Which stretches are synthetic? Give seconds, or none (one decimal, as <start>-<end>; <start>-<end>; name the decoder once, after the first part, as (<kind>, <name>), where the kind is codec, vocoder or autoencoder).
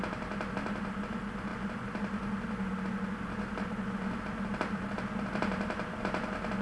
none